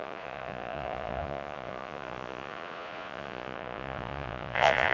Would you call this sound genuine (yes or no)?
no